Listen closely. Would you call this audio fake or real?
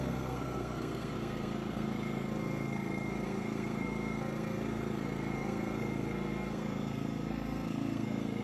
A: fake